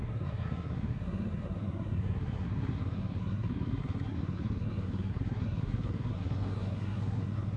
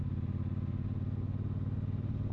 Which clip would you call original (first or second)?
second